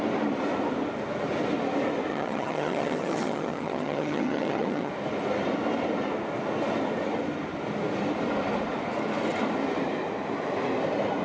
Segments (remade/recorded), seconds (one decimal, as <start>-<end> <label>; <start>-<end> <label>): 0.0-2.1 recorded; 2.1-4.9 remade; 4.9-11.2 recorded